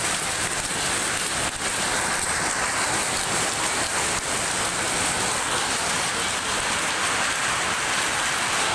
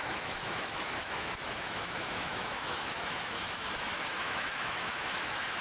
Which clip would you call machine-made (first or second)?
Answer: second